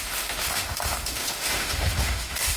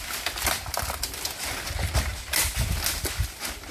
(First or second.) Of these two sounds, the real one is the second